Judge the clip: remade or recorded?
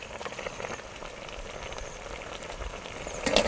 recorded